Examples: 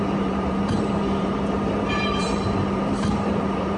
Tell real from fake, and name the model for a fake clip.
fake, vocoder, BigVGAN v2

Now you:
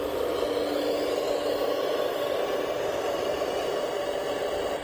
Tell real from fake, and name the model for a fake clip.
real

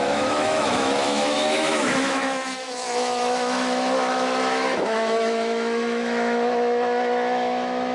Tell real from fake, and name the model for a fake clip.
fake, autoencoder, DAC-VAE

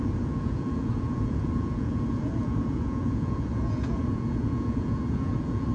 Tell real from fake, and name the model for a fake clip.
fake, vocoder, Vocos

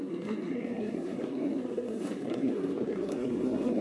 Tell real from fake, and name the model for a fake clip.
fake, codec, SNAC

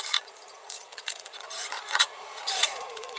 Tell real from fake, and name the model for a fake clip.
fake, vocoder, Vocos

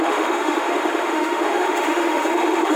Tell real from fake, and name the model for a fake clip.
fake, autoencoder, DAC-VAE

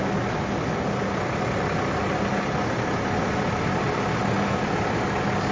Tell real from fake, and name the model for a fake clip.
real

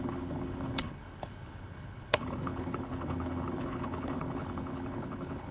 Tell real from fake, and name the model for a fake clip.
fake, codec, HILCodec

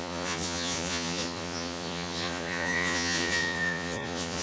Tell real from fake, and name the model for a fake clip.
fake, vocoder, Vocos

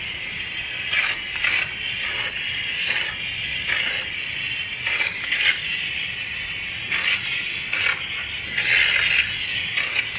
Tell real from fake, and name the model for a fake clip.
real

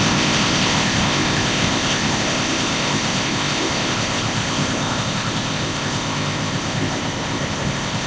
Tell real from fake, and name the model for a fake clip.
fake, codec, ZipCodec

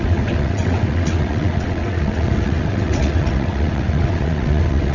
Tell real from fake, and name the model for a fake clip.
fake, vocoder, WaveNeXt